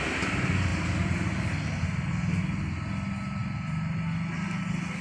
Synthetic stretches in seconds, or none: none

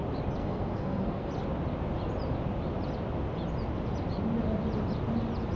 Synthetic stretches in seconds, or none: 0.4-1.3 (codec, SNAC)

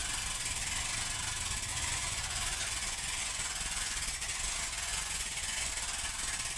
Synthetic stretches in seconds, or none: 1.7-5.7 (vocoder, Vocos)

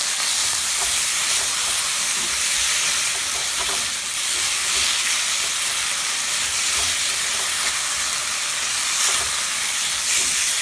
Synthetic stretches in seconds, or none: 0.4-2.8 (vocoder, BigVGAN v2)

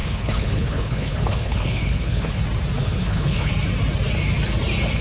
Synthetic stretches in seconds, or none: 0.0-2.4 (codec, HILCodec); 2.8-3.5